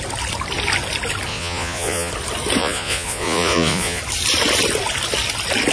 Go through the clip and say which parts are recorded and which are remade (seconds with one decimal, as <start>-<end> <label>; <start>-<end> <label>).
0.0-1.3 recorded; 1.3-2.1 remade; 2.1-2.6 recorded; 2.6-4.0 remade; 4.0-5.7 recorded